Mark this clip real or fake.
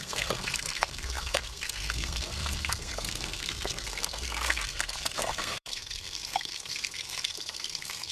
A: fake